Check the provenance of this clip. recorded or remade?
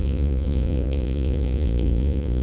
remade